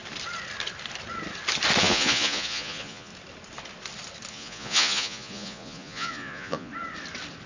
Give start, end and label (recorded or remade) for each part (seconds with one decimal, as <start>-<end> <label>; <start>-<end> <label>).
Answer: 0.0-1.8 recorded; 1.8-3.1 remade; 3.1-4.3 recorded; 4.3-6.7 remade; 6.7-7.5 recorded